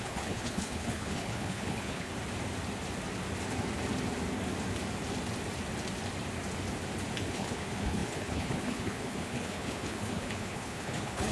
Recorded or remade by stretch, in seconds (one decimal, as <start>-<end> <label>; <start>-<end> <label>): 0.0-2.1 remade; 2.1-7.3 recorded; 7.3-11.3 remade